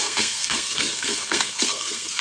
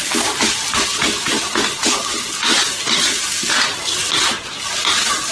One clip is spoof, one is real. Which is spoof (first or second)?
first